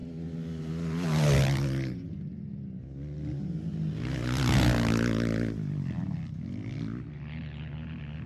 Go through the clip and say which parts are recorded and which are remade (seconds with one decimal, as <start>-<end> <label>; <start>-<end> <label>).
0.0-8.3 recorded